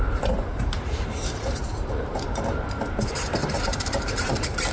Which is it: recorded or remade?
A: remade